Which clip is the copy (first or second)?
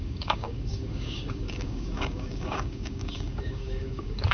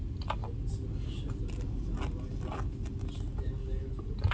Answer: first